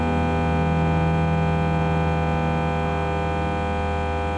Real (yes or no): yes